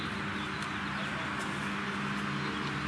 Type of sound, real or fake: real